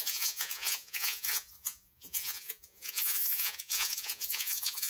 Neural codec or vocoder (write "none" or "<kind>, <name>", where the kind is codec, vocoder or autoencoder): vocoder, Vocos